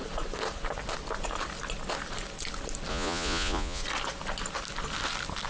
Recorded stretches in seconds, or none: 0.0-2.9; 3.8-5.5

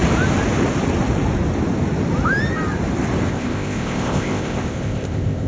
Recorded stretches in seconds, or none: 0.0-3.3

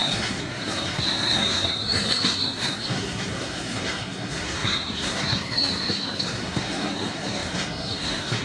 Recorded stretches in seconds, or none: none

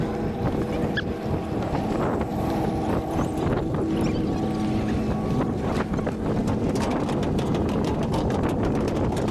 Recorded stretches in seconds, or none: 0.0-9.3

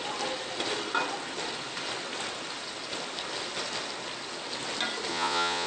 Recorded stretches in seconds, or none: 0.0-5.1